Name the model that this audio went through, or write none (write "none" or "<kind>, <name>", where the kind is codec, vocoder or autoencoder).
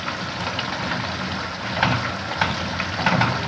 none